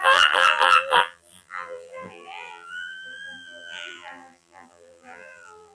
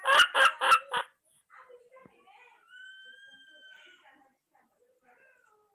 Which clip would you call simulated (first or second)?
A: first